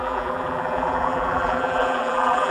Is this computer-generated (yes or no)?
yes